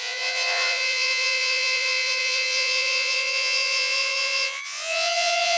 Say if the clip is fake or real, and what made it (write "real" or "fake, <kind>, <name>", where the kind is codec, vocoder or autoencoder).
fake, vocoder, Vocos